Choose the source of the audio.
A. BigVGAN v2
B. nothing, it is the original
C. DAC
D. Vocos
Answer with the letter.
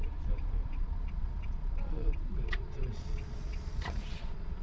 D